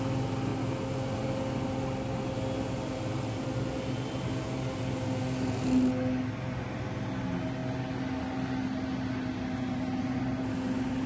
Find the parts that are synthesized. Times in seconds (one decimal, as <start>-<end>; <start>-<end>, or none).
none